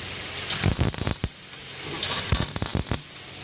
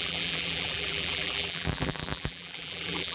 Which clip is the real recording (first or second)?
first